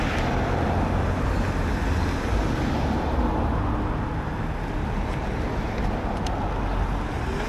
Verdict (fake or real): real